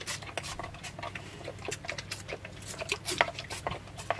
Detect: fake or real real